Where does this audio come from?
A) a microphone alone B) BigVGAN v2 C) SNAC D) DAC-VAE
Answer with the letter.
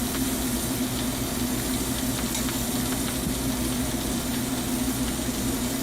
A